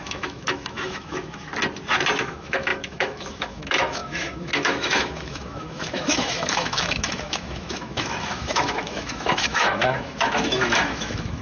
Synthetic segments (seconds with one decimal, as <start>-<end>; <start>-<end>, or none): 0.0-1.5; 2.2-11.4